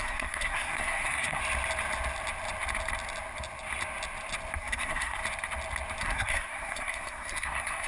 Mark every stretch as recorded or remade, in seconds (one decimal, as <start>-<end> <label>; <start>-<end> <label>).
0.0-1.4 remade; 1.4-4.6 recorded; 4.6-5.2 remade; 5.2-6.0 recorded; 6.0-7.9 remade

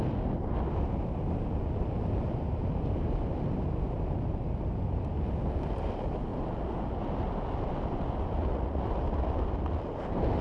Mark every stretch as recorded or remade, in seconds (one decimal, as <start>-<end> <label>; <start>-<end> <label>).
0.0-10.4 recorded

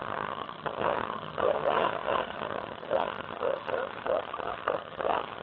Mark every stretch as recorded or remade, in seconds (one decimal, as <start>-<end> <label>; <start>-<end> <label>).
0.0-5.4 remade

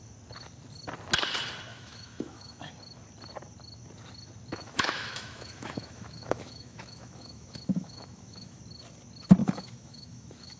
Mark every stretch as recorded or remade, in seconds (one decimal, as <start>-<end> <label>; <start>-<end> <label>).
0.0-1.7 recorded; 1.7-2.7 remade; 2.7-4.5 recorded; 4.5-8.6 remade; 8.6-9.4 recorded; 9.4-10.6 remade

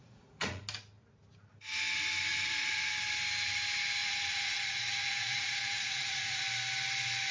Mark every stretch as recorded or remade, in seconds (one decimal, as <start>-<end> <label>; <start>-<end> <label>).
0.0-0.6 remade; 0.6-2.3 recorded; 2.3-2.9 remade; 2.9-4.0 recorded; 4.0-6.4 remade; 6.4-7.3 recorded

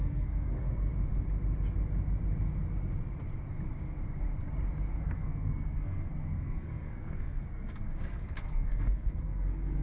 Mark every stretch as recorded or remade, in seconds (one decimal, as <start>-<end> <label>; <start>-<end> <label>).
0.0-0.9 remade; 0.9-4.9 recorded; 4.9-9.8 remade

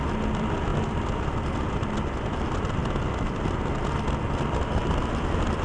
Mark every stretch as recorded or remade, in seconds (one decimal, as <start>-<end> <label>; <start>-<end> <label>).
0.0-5.6 recorded

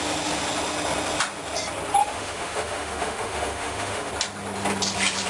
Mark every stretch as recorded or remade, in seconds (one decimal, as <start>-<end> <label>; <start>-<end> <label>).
0.0-2.0 recorded; 2.0-4.1 remade; 4.1-5.3 recorded